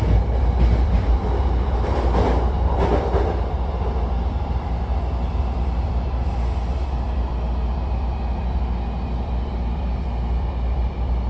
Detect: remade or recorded remade